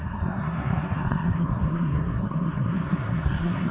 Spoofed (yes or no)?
yes